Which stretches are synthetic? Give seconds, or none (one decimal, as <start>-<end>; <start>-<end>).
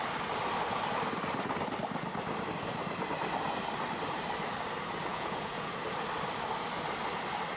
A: 5.1-5.7